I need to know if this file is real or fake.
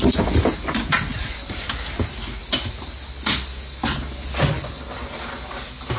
real